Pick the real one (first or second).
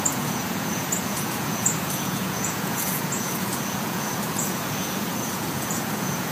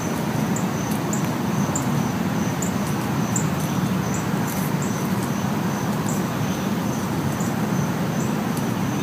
second